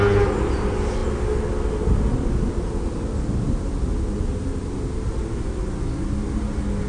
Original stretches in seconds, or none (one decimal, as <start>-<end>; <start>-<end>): 0.0-6.9